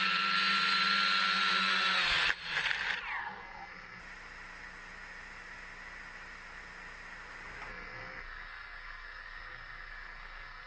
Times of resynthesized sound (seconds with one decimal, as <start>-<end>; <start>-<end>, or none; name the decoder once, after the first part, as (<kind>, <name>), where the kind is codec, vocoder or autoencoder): 3.2-4.0 (codec, SNAC); 7.7-10.7

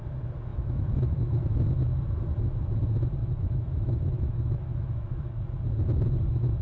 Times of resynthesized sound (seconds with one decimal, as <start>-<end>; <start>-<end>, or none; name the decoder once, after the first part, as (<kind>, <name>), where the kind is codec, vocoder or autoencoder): 0.5-1.6 (autoencoder, DAC-VAE); 3.2-5.4

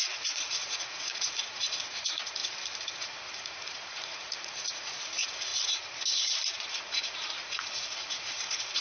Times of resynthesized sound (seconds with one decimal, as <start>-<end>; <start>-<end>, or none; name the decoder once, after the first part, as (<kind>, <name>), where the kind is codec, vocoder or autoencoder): 0.0-2.4 (vocoder, Vocos); 3.0-5.5; 6.7-8.8

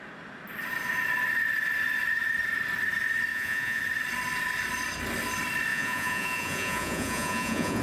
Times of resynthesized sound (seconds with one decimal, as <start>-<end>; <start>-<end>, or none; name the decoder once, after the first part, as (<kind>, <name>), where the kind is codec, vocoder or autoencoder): 3.3-3.8 (vocoder, Vocos); 5.7-7.8

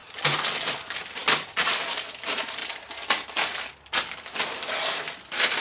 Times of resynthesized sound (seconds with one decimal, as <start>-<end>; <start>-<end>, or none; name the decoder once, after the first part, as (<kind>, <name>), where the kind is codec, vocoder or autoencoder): 0.7-5.6 (vocoder, BigVGAN v2)

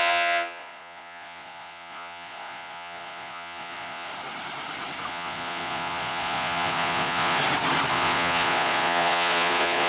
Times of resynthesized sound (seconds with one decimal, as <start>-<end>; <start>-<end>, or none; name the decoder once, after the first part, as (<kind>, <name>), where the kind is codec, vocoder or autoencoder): 0.0-4.1 (vocoder, Vocos); 5.1-7.4; 7.9-9.9

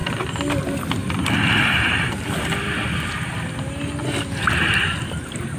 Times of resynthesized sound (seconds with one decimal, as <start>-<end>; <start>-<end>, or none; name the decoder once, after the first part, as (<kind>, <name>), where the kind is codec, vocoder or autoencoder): none